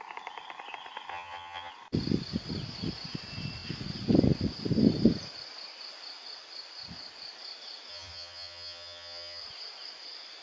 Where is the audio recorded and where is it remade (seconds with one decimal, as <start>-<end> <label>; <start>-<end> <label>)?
0.0-1.1 recorded; 1.1-1.7 remade; 1.7-7.9 recorded; 7.9-9.4 remade; 9.4-10.4 recorded